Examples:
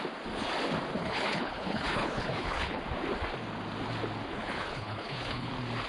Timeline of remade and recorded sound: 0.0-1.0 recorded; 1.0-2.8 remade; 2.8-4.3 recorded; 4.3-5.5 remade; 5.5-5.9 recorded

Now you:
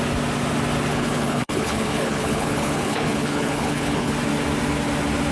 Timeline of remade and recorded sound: 0.0-0.9 recorded; 0.9-4.1 remade; 4.1-5.3 recorded

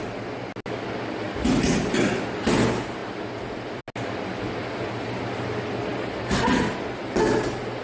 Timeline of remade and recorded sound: 0.0-7.8 recorded